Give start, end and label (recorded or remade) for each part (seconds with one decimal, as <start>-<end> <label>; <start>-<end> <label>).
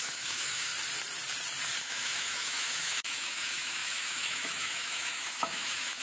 0.0-0.7 remade; 0.7-1.8 recorded; 1.8-6.0 remade